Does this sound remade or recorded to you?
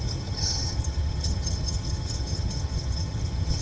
remade